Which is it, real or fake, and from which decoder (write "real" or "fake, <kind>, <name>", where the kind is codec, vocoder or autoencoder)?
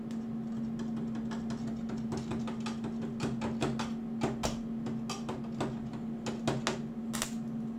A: real